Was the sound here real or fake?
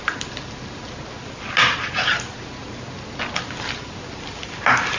real